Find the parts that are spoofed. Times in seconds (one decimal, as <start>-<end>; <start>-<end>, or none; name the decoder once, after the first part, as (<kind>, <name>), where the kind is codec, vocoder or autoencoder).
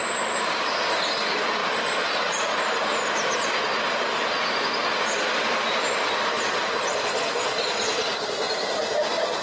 0.0-0.7 (vocoder, BigVGAN v2); 1.6-3.5; 8.1-8.8